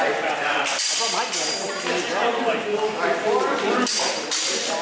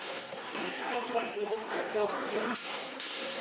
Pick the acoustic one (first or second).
first